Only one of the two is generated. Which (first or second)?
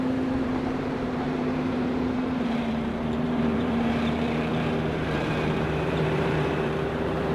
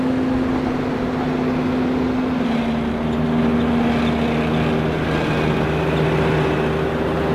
first